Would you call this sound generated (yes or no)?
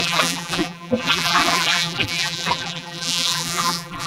yes